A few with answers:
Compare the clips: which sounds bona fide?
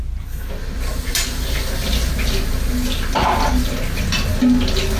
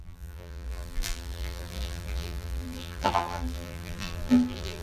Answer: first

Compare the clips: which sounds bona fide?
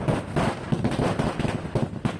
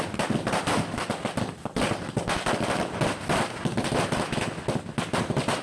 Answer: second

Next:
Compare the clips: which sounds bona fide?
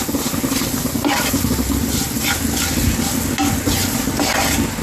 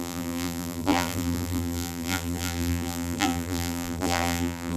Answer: first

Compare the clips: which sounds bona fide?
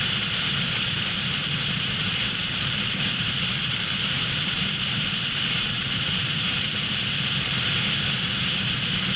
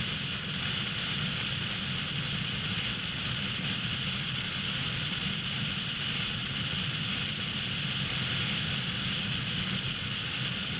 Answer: second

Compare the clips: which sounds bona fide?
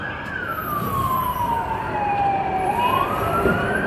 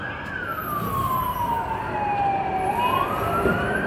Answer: second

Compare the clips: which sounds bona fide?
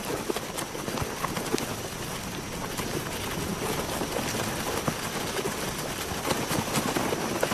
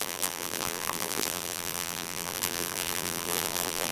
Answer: first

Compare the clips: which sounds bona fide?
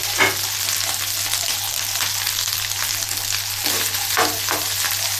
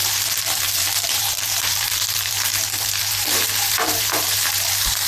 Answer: first